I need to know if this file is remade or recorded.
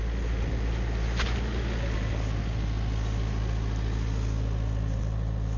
recorded